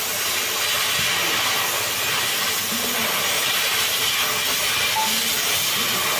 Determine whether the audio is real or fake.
real